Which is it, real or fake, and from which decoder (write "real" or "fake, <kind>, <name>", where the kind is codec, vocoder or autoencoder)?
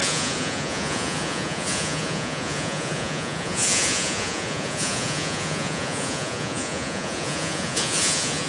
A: fake, vocoder, Vocos